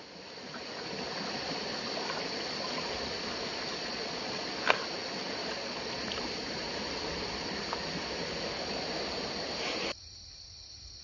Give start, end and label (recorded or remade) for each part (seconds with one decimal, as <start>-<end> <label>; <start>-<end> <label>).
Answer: 0.0-3.8 recorded; 3.8-4.4 remade; 4.4-5.4 recorded; 5.4-6.1 remade; 6.1-11.0 recorded